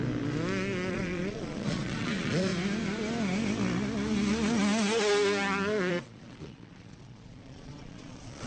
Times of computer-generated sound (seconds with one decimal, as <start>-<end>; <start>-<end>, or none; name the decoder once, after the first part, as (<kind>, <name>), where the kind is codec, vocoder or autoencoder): 0.9-2.5 (vocoder, Vocos); 5.9-8.5